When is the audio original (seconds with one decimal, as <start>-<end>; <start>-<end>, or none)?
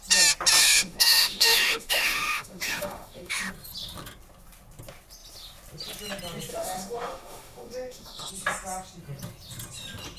0.0-0.6; 3.5-6.5; 8.3-10.2